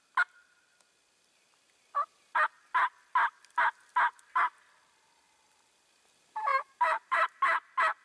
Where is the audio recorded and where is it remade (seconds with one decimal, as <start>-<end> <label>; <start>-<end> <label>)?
0.0-6.5 recorded; 6.5-7.2 remade; 7.2-8.0 recorded